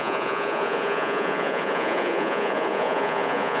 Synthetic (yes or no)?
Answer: yes